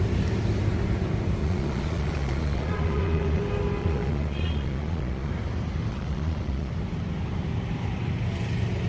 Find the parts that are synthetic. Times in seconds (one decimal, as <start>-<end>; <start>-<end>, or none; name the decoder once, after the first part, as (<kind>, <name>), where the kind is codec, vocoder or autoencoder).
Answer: 1.4-3.4 (vocoder, Vocos); 3.8-5.3; 5.9-6.7